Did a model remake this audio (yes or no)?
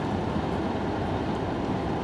no